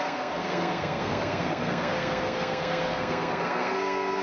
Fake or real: fake